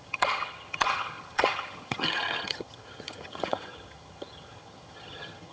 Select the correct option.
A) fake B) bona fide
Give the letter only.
A